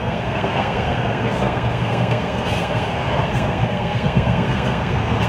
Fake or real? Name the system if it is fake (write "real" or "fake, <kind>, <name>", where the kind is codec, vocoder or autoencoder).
fake, codec, SNAC